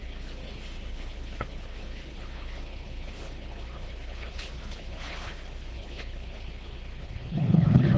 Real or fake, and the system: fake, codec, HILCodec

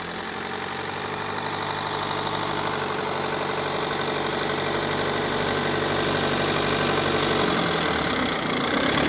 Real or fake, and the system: real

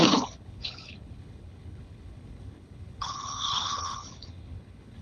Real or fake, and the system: fake, codec, HILCodec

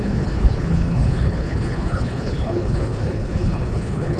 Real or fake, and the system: fake, codec, HILCodec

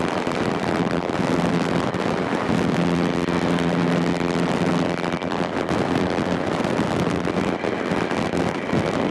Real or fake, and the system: real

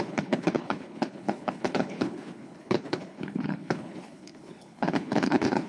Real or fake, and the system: fake, codec, HILCodec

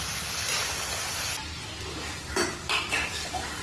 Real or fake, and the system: real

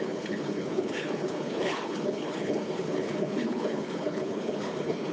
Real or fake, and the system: fake, codec, HILCodec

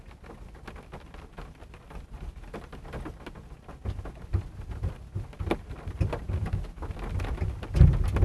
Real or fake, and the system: real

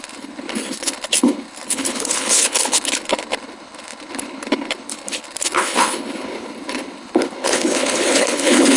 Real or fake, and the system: fake, codec, HILCodec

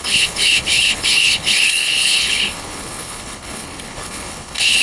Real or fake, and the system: fake, codec, HILCodec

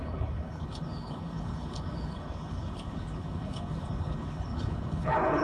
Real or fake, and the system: fake, codec, HILCodec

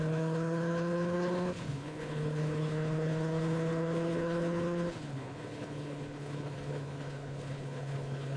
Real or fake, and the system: fake, codec, HILCodec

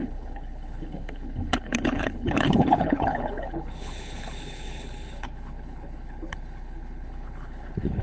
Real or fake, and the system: fake, codec, HILCodec